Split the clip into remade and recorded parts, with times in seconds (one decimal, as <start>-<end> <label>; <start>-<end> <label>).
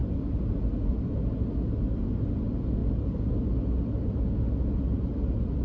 0.0-5.6 recorded